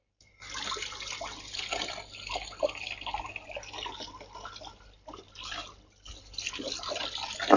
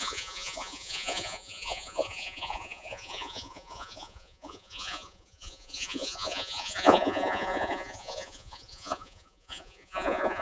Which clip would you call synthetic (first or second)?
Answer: second